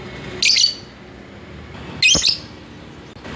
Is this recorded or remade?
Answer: recorded